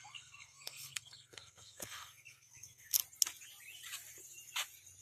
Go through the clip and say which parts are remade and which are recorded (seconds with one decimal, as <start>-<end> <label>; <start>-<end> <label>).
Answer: 0.0-3.0 remade; 3.0-5.0 recorded

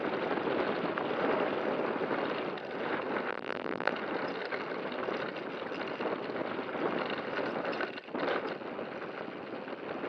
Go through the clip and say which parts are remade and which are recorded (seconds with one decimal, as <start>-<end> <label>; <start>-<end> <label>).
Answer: 0.0-3.3 recorded; 3.3-3.9 remade; 3.9-10.1 recorded

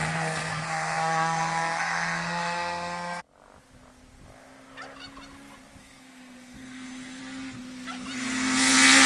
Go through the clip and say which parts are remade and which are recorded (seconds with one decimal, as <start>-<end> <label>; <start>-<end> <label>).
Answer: 0.0-3.2 remade; 3.2-5.8 recorded; 5.8-7.2 remade; 7.2-9.1 recorded

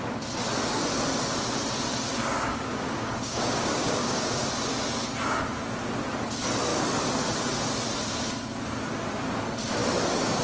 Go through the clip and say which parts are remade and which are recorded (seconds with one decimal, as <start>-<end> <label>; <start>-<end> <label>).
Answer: 0.0-2.1 recorded; 2.1-4.5 remade; 4.5-10.4 recorded

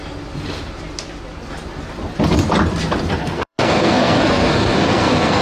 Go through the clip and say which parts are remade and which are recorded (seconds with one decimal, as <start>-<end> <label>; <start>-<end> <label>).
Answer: 0.0-3.2 recorded; 3.2-5.4 remade

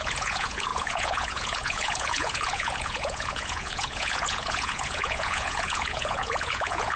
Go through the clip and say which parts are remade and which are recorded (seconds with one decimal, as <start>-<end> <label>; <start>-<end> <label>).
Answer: 0.0-7.0 remade

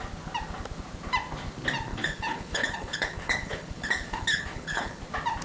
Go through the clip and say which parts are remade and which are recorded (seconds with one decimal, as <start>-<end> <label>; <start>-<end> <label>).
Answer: 0.0-1.9 recorded; 1.9-5.0 remade; 5.0-5.4 recorded

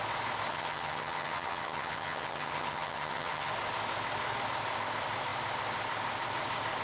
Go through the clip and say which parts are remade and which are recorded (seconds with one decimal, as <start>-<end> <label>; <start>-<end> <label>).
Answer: 0.0-0.5 recorded; 0.5-3.5 remade; 3.5-6.8 recorded